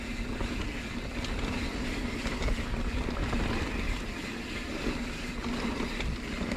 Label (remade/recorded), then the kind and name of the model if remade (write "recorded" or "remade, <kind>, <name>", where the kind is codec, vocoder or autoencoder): recorded